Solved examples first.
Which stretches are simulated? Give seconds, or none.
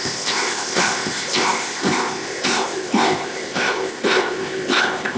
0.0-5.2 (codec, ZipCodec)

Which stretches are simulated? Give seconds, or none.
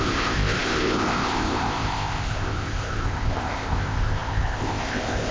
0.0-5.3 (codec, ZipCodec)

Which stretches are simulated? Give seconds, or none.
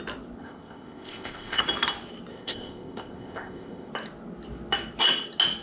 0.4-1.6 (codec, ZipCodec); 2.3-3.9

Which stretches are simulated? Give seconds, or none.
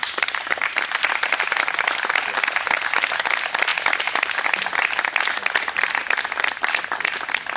none